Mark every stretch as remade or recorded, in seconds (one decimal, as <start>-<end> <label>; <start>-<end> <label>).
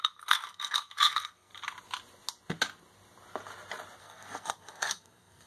0.0-1.5 remade; 1.5-4.0 recorded; 4.0-5.5 remade